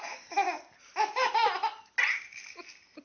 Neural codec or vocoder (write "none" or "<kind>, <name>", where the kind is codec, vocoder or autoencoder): none